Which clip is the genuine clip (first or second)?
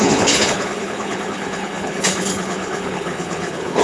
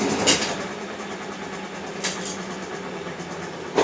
second